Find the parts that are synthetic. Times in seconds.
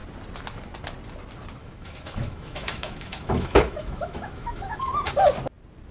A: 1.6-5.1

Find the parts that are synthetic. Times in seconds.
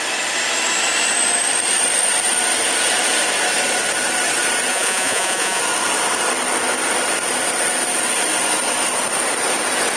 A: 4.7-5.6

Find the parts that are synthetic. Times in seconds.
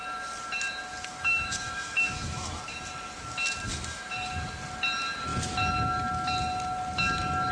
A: 1.1-2.6; 3.7-4.5